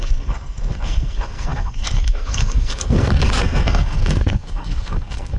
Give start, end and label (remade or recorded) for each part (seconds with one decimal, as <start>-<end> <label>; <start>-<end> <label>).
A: 0.0-5.4 remade